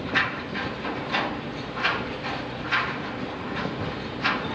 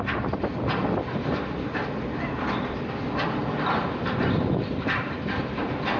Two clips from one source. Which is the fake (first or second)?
second